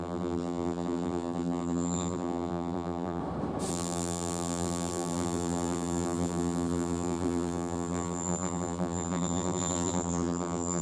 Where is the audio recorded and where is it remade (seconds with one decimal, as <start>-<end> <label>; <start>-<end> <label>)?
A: 0.0-3.2 remade; 3.2-3.7 recorded; 3.7-10.8 remade